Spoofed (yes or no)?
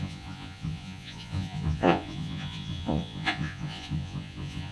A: yes